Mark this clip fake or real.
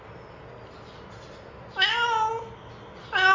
real